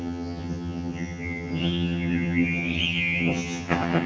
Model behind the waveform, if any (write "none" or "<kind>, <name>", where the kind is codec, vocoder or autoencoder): vocoder, HiFi-GAN